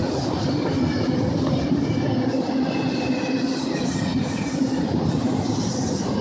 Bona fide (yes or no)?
yes